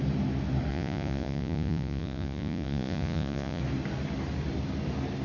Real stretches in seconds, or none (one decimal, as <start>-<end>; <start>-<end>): 0.0-0.7; 3.6-5.2